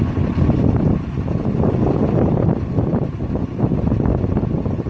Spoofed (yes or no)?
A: no